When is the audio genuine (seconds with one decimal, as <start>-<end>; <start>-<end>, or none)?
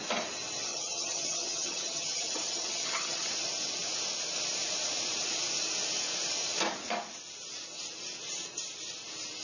0.0-0.7; 3.3-9.4